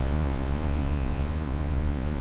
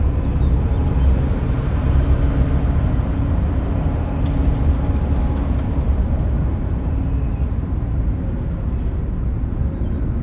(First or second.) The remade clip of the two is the first